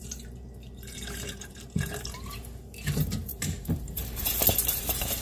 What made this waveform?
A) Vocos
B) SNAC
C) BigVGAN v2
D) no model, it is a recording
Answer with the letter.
C